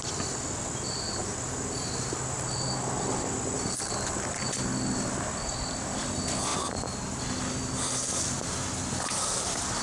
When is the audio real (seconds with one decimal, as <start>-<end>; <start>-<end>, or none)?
0.0-9.8